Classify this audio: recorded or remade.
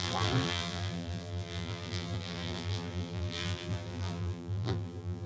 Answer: remade